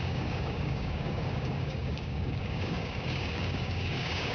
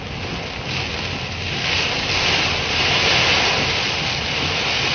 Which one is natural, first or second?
second